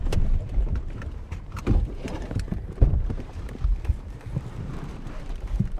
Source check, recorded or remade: remade